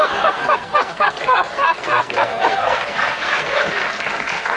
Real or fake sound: fake